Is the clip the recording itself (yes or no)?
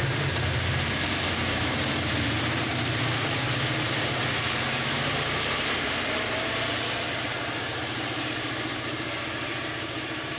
no